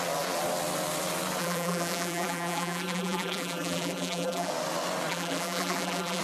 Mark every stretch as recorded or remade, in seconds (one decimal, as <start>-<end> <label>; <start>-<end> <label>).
0.0-1.4 recorded; 1.4-4.5 remade; 4.5-5.1 recorded; 5.1-6.2 remade